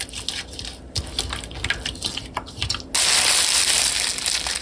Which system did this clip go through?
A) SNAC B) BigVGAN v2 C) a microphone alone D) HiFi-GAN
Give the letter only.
C